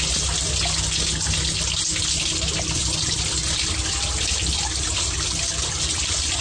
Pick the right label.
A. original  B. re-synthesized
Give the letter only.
A